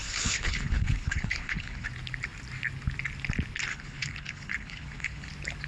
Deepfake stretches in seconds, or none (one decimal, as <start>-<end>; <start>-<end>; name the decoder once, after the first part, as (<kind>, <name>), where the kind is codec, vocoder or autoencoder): 0.0-1.9 (codec, HILCodec); 3.7-5.3